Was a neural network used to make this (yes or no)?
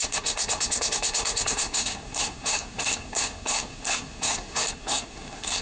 yes